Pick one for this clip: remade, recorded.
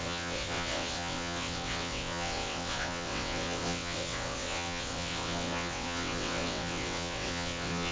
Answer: remade